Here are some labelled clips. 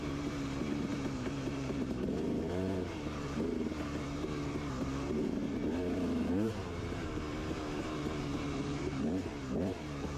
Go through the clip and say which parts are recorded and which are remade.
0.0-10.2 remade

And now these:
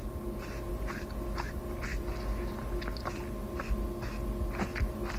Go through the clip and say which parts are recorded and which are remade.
0.0-5.2 recorded

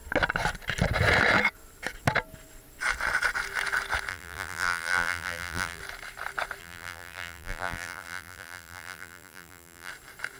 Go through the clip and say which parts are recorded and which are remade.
0.0-4.1 recorded; 4.1-5.8 remade; 5.8-6.6 recorded; 6.6-9.9 remade; 9.9-10.4 recorded

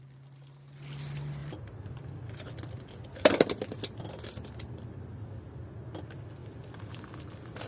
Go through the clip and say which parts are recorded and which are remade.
0.0-1.4 recorded; 1.4-6.0 remade; 6.0-7.7 recorded

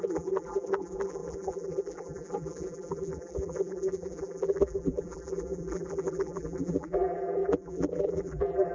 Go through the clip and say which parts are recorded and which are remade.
0.0-8.7 remade

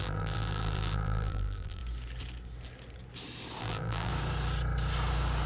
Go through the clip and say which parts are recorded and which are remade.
0.0-1.8 remade; 1.8-3.6 recorded; 3.6-4.1 remade; 4.1-5.5 recorded

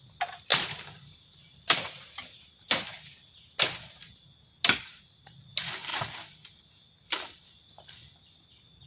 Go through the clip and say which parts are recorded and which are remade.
0.0-0.5 recorded; 0.5-3.1 remade; 3.1-8.9 recorded